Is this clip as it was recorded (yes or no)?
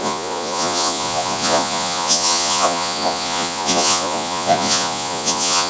no